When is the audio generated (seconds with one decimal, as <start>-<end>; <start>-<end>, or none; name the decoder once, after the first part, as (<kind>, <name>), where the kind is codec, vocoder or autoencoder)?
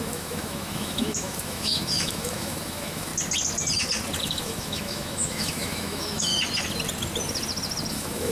0.0-3.1 (autoencoder, DAC-VAE); 4.2-6.3; 7.9-8.3